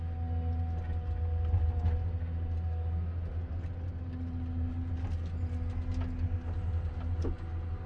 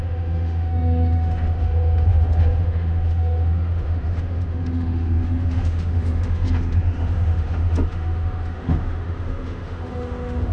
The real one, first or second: first